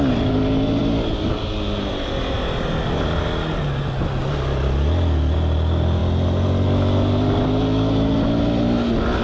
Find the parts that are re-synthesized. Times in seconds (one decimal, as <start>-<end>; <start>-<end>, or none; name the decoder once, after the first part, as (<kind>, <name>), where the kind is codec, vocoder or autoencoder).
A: none